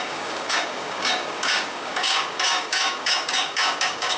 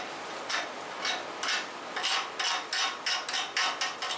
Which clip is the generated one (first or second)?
first